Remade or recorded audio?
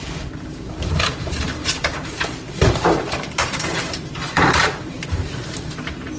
remade